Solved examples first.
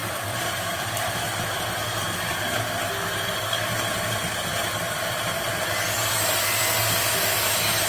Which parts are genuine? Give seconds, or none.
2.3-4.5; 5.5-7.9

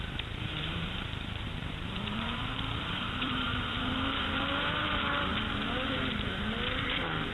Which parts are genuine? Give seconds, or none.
5.3-7.3

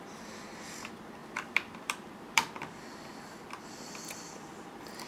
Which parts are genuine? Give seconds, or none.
0.0-1.2; 4.3-5.1

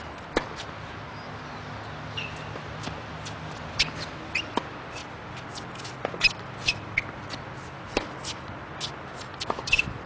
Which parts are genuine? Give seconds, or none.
0.0-9.3

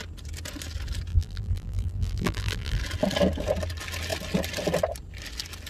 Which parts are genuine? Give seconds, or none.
0.0-1.1; 2.8-5.7

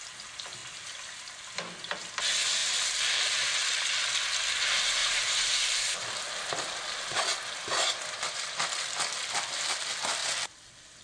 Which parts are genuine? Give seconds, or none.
0.0-2.6; 3.8-5.0; 7.2-11.0